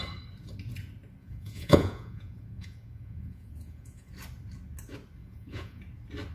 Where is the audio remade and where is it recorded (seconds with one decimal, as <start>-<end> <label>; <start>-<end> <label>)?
0.0-1.2 recorded; 1.2-4.1 remade; 4.1-5.2 recorded; 5.2-5.8 remade; 5.8-6.3 recorded